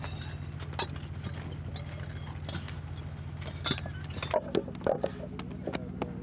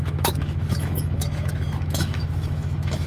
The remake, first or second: second